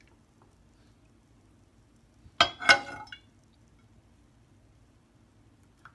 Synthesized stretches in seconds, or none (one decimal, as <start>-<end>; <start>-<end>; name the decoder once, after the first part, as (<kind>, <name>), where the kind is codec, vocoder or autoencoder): none